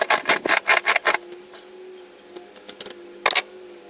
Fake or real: real